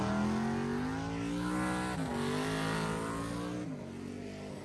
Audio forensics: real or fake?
real